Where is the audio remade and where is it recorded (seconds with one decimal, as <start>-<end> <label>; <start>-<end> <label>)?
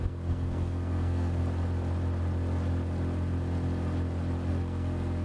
0.0-1.4 remade; 1.4-4.5 recorded; 4.5-5.2 remade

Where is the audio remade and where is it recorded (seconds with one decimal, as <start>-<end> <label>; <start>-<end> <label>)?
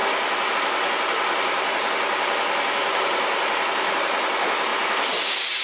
0.0-5.6 recorded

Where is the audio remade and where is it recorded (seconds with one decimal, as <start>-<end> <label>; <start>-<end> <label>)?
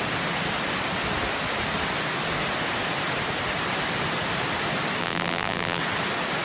0.0-5.0 recorded; 5.0-5.8 remade; 5.8-6.4 recorded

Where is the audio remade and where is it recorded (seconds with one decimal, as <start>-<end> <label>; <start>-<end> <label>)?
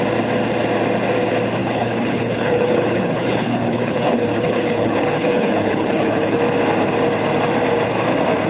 0.0-1.6 recorded; 1.6-6.4 remade; 6.4-8.5 recorded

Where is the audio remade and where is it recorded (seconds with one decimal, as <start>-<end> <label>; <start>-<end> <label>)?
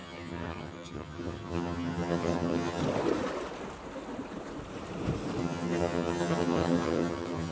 0.0-2.8 remade; 2.8-5.4 recorded; 5.4-7.5 remade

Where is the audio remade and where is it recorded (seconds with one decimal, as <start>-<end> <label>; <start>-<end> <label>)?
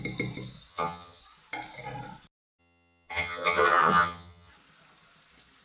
0.0-0.7 recorded; 0.7-1.2 remade; 1.2-2.6 recorded; 2.6-4.5 remade; 4.5-5.6 recorded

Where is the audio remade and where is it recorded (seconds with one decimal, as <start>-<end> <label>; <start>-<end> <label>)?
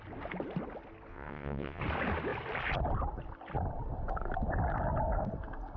0.0-1.1 recorded; 1.1-1.8 remade; 1.8-5.8 recorded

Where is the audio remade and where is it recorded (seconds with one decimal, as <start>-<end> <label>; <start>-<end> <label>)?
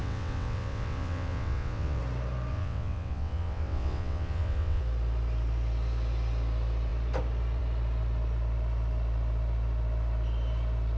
0.0-2.0 remade; 2.0-2.5 recorded; 2.5-4.8 remade; 4.8-11.0 recorded